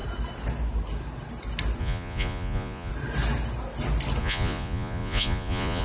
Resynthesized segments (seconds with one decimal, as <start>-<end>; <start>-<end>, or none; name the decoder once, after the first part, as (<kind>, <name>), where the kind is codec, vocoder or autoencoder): 1.8-2.9 (vocoder, Vocos); 4.2-5.8